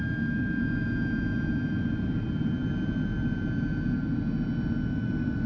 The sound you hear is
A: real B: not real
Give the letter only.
A